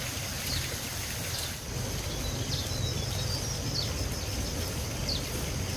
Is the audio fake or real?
real